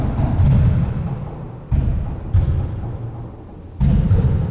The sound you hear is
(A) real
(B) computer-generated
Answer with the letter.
A